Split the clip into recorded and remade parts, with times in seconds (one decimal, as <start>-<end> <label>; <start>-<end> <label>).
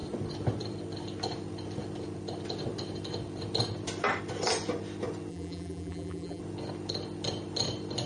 0.0-5.3 recorded; 5.3-6.4 remade; 6.4-8.1 recorded